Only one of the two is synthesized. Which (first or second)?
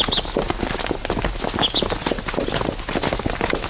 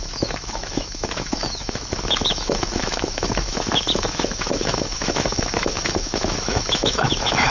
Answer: second